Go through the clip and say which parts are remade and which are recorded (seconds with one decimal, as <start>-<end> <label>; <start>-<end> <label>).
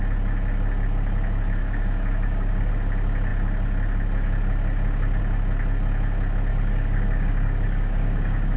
0.0-1.6 recorded; 1.6-2.7 remade; 2.7-6.5 recorded; 6.5-8.6 remade